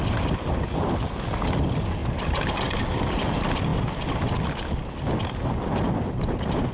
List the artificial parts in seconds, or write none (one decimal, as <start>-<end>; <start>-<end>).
2.0-2.8